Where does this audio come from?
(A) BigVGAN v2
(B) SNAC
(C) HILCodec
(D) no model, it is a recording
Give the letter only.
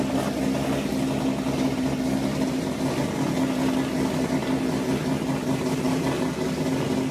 D